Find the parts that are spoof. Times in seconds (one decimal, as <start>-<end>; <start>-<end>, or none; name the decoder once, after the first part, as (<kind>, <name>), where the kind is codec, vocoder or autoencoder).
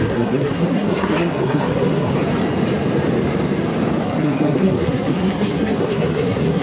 0.0-2.1 (codec, SNAC); 4.0-6.6